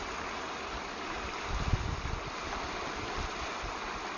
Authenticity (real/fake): real